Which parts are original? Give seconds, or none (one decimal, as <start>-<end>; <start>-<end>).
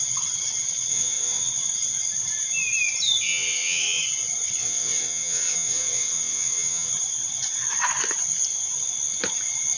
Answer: 0.0-0.9; 1.5-3.3; 4.0-4.6; 6.9-9.8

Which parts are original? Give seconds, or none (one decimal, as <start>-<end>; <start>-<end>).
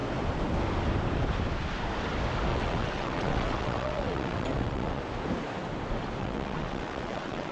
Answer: 0.0-2.5; 5.0-6.2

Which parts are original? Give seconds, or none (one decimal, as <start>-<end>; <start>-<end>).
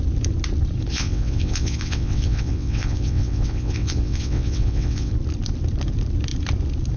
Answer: 0.0-0.9; 5.1-7.0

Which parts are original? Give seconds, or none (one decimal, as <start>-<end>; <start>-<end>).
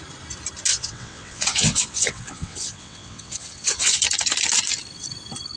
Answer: 0.0-0.7; 4.0-5.6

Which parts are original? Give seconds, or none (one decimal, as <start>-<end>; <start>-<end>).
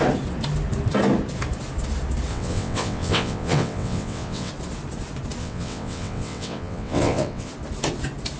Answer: 0.0-2.3; 4.5-5.4; 7.5-8.4